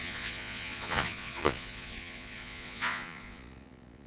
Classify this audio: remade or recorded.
remade